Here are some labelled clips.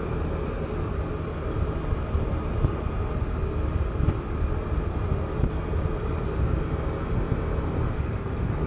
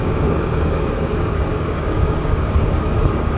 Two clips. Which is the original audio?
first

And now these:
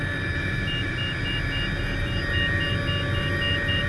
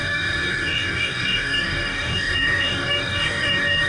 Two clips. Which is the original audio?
first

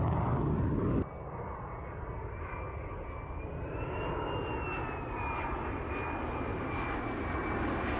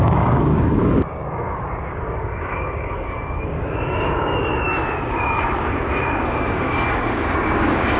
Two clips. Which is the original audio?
first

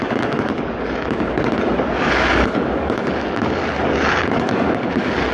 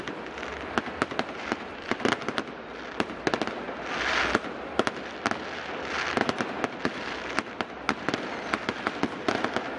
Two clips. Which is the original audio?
second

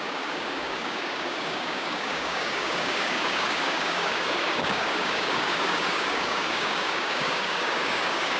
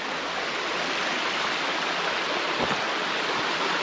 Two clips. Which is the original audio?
second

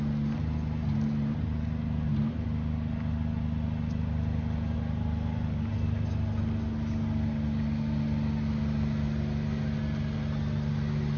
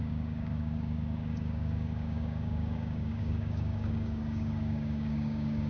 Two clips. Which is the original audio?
first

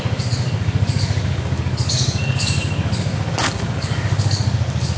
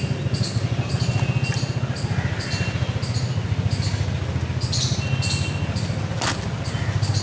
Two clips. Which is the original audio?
second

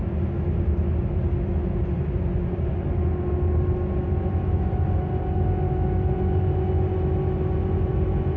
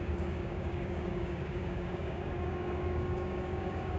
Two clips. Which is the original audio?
first